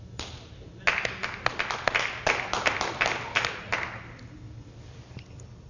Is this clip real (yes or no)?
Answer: yes